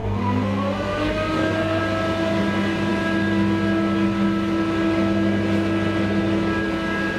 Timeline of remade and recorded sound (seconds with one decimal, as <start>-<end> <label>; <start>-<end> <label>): 0.0-1.8 remade; 1.8-7.2 recorded